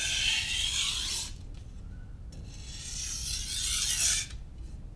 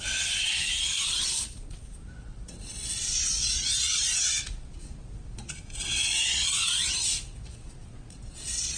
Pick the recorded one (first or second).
first